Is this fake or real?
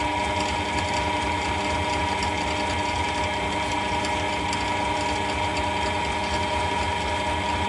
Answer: real